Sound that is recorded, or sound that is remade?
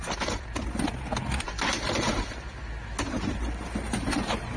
recorded